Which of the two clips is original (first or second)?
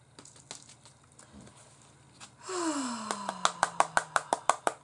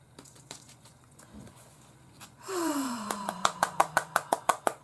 first